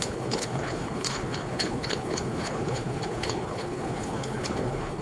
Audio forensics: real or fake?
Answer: fake